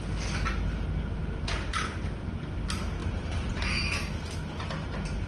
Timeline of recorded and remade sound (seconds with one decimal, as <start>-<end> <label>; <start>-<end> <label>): 0.0-3.0 recorded; 3.0-3.5 remade; 3.5-5.3 recorded